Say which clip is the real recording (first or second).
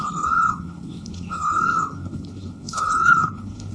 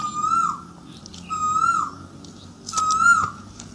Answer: second